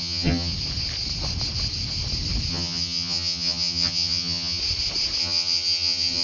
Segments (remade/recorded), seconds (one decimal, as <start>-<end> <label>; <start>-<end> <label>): 0.0-0.5 remade; 0.5-2.5 recorded; 2.5-4.6 remade; 4.6-5.2 recorded; 5.2-6.2 remade